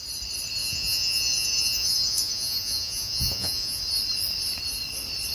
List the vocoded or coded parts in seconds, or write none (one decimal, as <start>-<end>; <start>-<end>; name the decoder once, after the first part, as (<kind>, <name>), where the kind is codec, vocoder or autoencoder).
0.6-3.8 (vocoder, Vocos)